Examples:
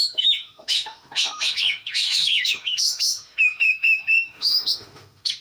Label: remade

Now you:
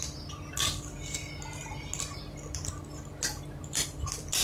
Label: recorded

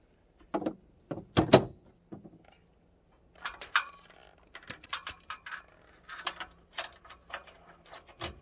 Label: recorded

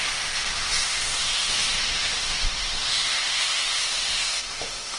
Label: remade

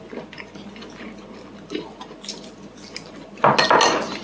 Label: recorded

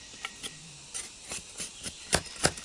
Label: recorded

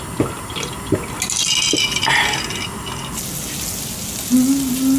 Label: recorded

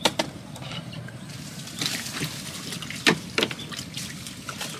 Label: recorded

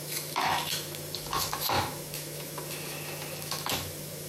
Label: remade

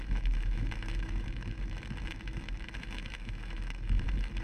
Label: remade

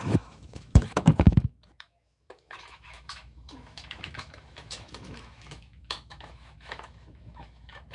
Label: remade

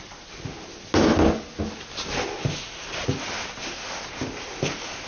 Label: recorded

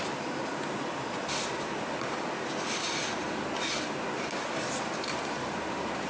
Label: recorded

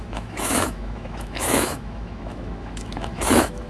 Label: remade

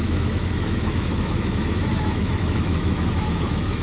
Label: remade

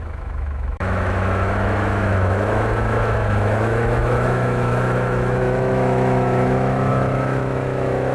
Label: remade